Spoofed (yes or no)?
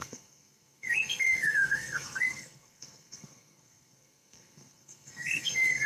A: yes